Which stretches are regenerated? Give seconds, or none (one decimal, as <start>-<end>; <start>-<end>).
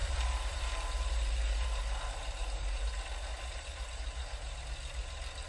0.0-1.8; 2.4-2.9; 3.3-4.6